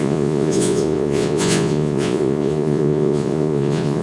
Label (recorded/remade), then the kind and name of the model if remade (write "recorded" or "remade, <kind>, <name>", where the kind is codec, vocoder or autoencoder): remade, vocoder, Vocos